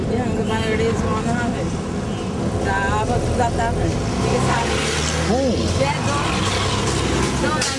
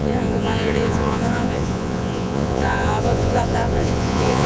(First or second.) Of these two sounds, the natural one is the first